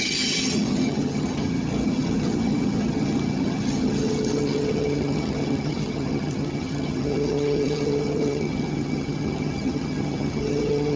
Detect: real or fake fake